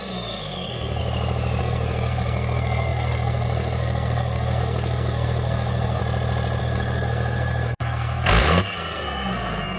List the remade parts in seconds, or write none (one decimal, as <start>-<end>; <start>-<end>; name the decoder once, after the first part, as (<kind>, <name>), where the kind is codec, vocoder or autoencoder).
0.0-1.0 (codec, SNAC); 1.6-6.0; 6.6-9.8